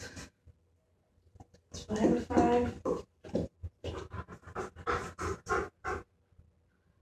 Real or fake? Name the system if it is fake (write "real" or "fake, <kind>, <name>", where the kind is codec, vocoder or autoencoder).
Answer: real